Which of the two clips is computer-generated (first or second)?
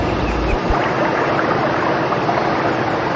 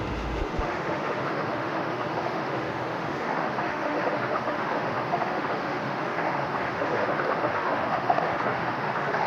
second